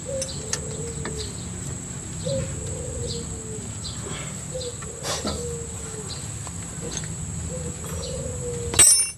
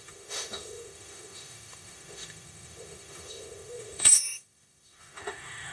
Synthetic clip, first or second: second